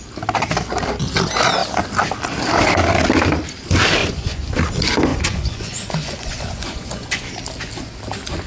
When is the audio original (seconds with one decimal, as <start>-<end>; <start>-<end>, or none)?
0.0-4.0; 4.5-5.1; 7.3-8.5

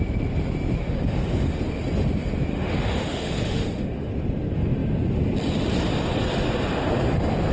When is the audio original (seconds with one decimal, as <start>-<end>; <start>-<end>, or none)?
0.0-0.8; 1.6-2.5; 4.1-7.5

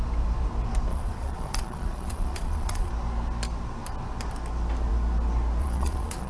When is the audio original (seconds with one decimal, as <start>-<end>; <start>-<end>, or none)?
0.0-0.9; 2.9-5.6